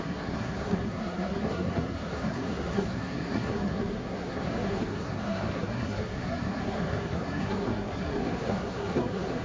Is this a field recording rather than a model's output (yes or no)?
no